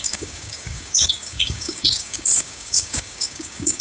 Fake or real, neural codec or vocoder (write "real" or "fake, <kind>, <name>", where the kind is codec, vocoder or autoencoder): fake, codec, DAC